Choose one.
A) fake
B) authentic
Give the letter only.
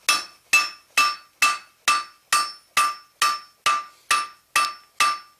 B